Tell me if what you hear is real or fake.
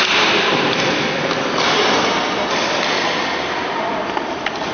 real